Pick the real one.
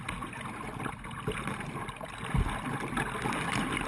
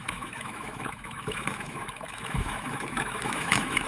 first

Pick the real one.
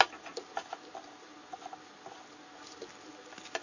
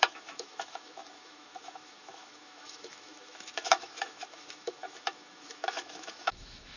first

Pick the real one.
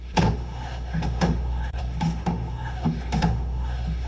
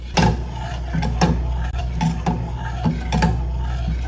second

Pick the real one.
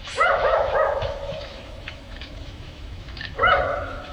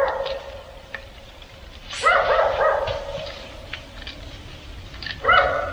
second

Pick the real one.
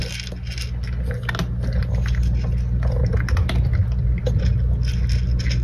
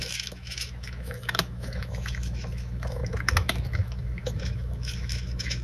first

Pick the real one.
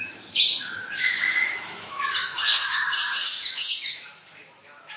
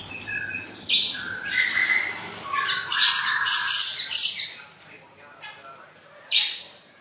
second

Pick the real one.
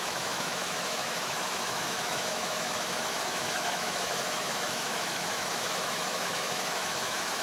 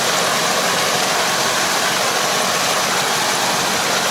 second